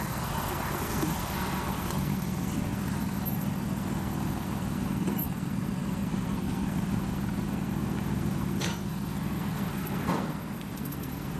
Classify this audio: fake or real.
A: fake